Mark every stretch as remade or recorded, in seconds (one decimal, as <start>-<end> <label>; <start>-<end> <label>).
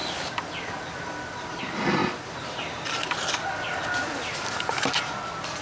0.0-5.6 recorded